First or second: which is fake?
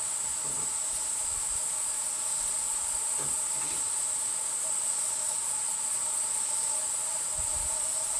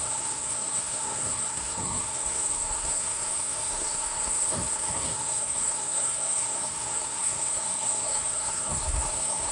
second